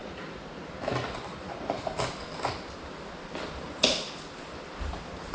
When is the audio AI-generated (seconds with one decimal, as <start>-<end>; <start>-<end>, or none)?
0.0-0.6; 1.3-2.0